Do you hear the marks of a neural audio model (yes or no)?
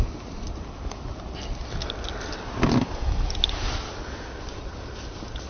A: no